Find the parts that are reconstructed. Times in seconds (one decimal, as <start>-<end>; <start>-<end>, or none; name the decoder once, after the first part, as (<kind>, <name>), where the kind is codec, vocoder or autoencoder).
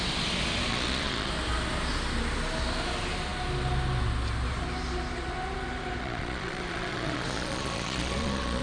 0.7-1.3 (vocoder, Vocos); 6.0-8.6